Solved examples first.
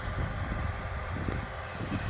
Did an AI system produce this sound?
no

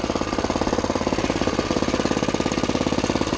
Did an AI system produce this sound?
no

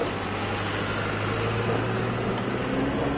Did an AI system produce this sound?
no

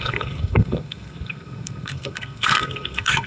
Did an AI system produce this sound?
yes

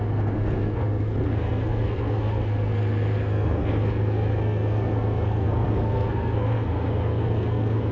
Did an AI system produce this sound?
yes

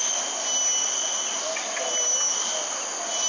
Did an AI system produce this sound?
no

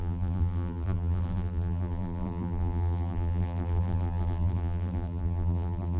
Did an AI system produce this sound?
yes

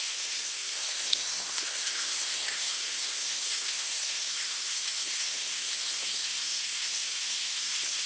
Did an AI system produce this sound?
yes